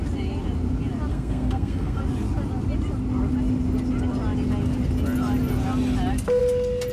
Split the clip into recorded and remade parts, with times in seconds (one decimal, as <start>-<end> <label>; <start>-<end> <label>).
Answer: 0.0-1.1 recorded; 1.1-2.0 remade; 2.0-6.9 recorded